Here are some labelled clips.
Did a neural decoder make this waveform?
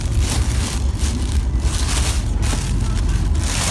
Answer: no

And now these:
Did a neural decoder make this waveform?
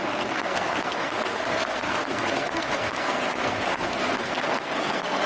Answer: yes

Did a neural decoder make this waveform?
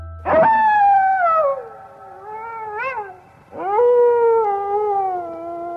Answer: no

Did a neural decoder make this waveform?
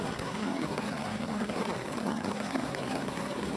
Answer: yes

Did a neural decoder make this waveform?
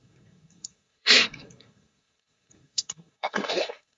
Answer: yes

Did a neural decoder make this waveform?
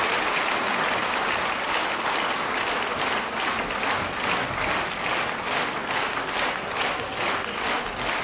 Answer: no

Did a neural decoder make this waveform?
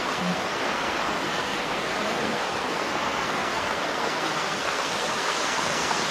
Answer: yes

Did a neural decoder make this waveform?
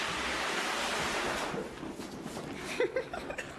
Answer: no